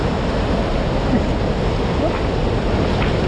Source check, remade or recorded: recorded